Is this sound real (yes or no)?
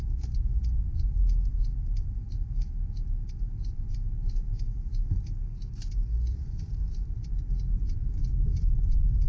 yes